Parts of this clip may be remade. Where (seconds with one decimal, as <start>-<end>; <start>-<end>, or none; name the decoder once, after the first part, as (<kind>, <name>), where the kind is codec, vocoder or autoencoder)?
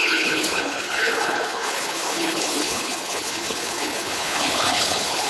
0.0-5.3 (codec, HILCodec)